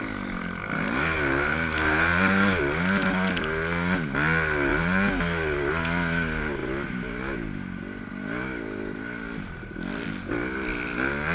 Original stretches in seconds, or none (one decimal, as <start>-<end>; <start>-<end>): 0.0-11.3